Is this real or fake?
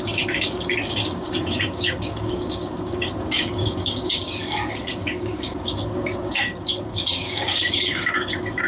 fake